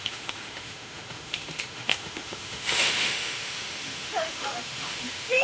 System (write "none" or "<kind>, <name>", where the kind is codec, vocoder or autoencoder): autoencoder, DAC-VAE